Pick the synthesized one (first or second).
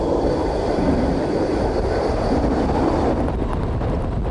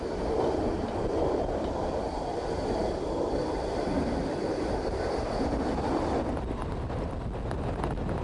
second